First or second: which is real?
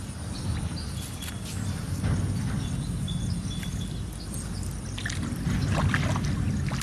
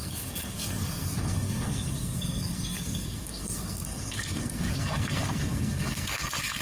first